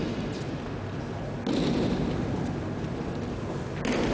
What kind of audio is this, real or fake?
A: real